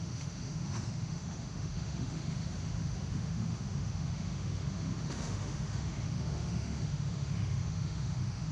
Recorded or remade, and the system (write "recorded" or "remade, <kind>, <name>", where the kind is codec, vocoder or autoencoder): remade, autoencoder, DAC-VAE